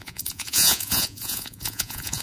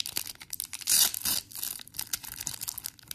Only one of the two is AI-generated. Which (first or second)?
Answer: first